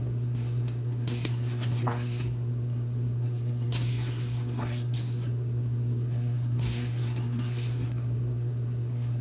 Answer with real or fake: fake